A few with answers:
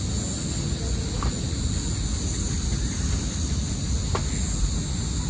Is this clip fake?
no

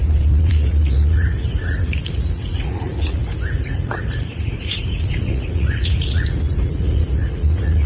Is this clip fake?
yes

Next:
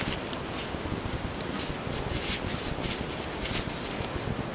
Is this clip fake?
no